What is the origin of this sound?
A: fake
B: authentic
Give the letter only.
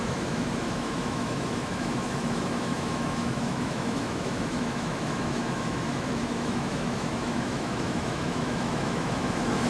A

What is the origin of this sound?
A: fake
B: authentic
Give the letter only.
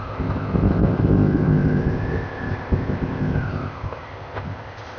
A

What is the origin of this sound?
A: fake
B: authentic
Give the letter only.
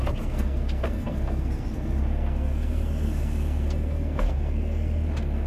A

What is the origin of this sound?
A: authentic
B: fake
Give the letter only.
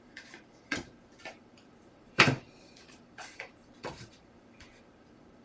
B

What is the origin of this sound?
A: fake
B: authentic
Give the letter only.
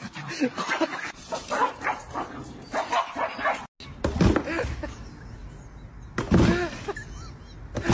B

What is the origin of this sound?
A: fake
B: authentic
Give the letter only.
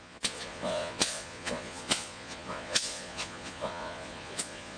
A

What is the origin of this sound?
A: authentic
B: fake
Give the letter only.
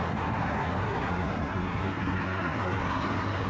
B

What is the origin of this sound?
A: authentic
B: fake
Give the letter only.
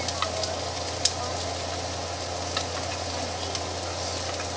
A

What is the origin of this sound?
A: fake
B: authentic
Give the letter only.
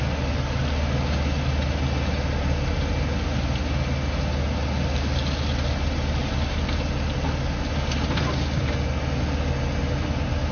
B